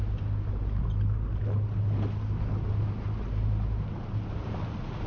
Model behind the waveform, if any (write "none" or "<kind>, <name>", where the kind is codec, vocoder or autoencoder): none